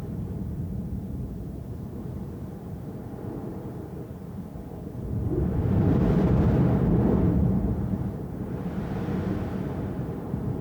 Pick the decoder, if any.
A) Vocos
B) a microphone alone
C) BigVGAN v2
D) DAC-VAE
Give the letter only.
C